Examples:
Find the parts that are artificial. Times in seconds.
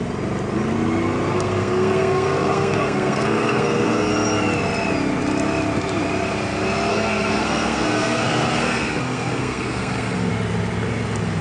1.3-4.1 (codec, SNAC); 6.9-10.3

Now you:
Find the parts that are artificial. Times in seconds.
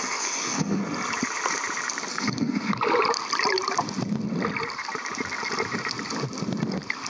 0.0-0.8 (codec, SNAC); 2.1-2.7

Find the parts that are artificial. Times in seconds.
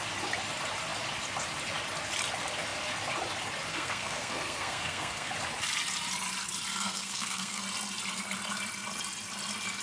3.7-5.3 (codec, SNAC); 6.7-7.6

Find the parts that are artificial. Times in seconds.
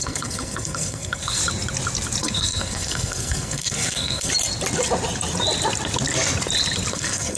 0.0-1.4 (codec, SNAC); 2.2-4.3; 6.9-7.4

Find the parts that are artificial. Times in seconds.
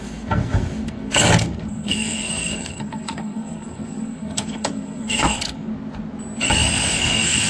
0.0-5.7 (codec, SNAC); 6.4-7.5